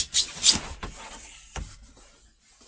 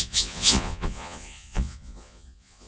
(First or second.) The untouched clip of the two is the first